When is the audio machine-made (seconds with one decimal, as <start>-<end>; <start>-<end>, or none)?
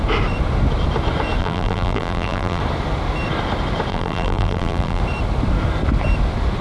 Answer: 1.4-2.6; 3.9-5.0